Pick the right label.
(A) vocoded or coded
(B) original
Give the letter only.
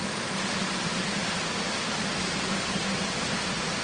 B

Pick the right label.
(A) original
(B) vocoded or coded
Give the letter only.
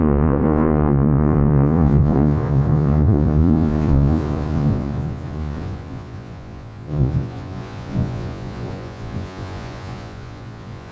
B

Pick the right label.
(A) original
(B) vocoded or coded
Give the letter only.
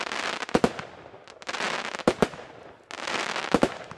A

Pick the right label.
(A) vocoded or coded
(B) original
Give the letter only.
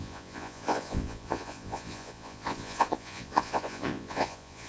A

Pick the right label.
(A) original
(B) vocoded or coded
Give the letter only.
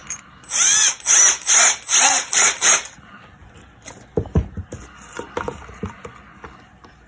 A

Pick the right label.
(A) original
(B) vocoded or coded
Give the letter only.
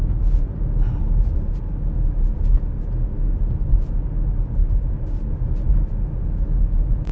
A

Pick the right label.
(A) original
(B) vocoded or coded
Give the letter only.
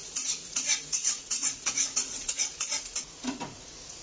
B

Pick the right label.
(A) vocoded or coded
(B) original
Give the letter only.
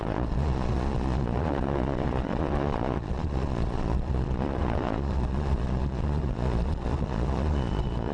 A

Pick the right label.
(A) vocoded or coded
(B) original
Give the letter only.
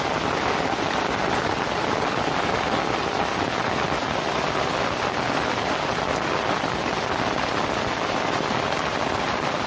B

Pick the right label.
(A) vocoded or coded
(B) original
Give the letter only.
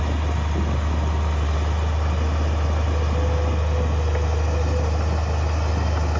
B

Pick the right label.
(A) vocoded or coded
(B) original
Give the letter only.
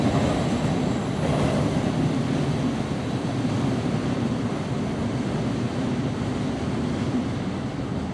B